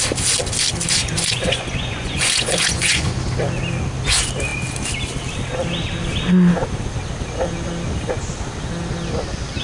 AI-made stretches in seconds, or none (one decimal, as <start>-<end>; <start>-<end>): 1.0-3.2